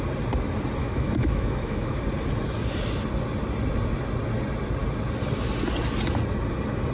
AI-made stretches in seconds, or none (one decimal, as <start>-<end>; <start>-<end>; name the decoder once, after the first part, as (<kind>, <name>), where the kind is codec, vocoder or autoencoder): 0.8-2.0 (autoencoder, DAC-VAE)